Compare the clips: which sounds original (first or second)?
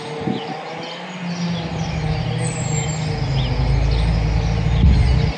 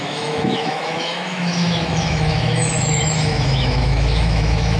first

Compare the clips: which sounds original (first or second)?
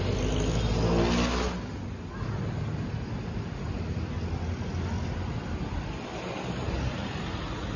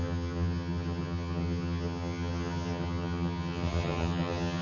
first